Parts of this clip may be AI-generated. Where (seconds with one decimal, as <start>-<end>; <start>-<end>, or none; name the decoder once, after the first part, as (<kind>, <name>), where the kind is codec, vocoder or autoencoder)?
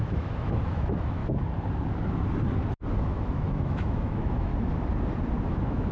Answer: 0.0-1.2 (autoencoder, DAC-VAE); 3.0-4.5; 5.5-5.9